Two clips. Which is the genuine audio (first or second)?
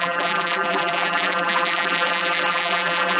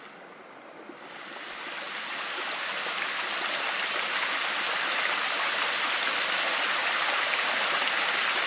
second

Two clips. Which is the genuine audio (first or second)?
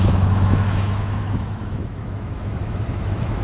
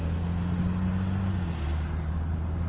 second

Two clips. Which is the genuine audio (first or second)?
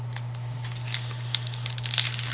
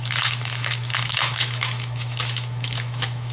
first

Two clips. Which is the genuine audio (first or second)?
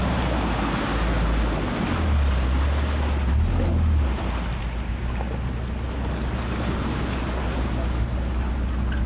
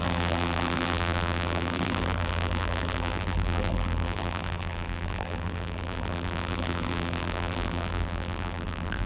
first